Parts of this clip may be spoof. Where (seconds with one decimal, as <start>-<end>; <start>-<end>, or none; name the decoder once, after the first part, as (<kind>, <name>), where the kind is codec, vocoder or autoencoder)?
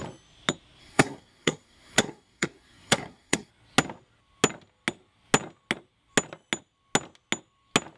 0.8-3.5 (codec, SNAC)